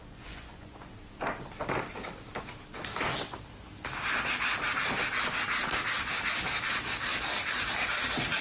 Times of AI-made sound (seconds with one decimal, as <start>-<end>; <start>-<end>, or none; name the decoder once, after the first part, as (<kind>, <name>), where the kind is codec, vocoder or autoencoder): 0.0-0.9 (vocoder, Vocos)